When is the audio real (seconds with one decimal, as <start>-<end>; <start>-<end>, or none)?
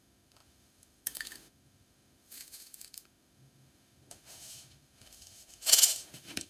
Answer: none